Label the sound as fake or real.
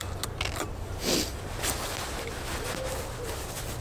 real